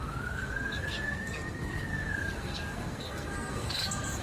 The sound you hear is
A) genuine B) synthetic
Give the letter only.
B